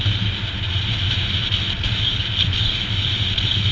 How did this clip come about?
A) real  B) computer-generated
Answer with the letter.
A